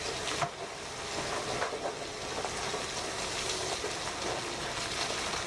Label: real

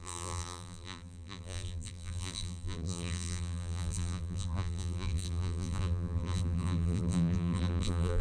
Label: fake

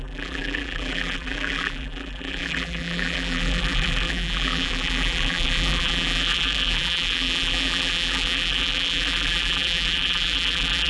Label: fake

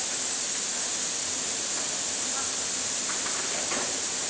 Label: fake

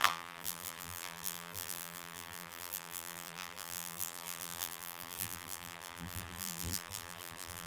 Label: fake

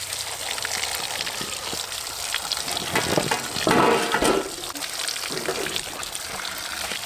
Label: real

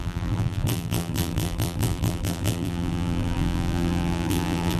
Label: fake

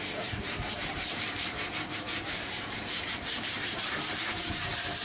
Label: fake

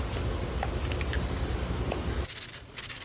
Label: real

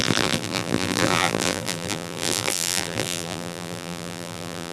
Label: fake